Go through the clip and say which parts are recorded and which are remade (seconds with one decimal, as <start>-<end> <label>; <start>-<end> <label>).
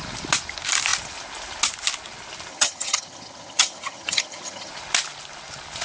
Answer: 0.0-2.5 recorded; 2.5-4.7 remade; 4.7-5.8 recorded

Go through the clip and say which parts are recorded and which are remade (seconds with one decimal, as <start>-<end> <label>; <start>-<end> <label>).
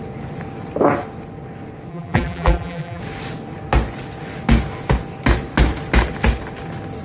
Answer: 0.0-1.9 recorded; 1.9-3.0 remade; 3.0-7.0 recorded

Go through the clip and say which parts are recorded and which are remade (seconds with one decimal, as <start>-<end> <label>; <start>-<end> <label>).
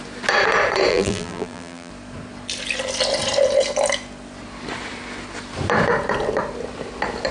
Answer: 0.0-0.9 recorded; 0.9-1.9 remade; 1.9-7.3 recorded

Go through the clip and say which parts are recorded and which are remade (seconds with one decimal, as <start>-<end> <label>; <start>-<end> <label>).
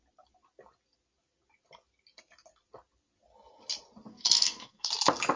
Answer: 0.0-4.1 recorded; 4.1-4.9 remade; 4.9-5.4 recorded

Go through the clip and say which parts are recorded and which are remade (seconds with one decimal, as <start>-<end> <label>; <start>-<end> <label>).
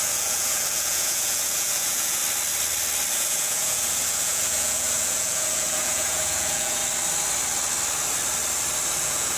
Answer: 0.0-2.2 remade; 2.2-3.1 recorded; 3.1-6.8 remade; 6.8-9.0 recorded; 9.0-9.4 remade